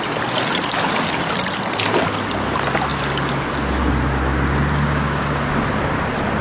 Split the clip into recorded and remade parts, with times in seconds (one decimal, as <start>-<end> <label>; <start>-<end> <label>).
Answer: 0.0-6.4 recorded